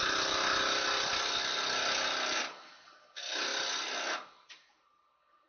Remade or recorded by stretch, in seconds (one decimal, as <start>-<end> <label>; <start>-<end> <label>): 0.0-1.1 remade; 1.1-2.4 recorded; 2.4-3.5 remade; 3.5-4.5 recorded; 4.5-5.5 remade